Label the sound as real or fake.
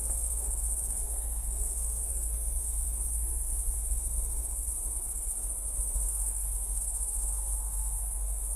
fake